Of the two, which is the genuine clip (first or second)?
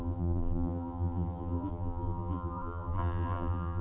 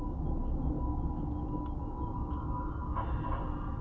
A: second